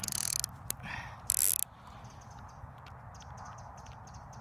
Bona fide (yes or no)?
yes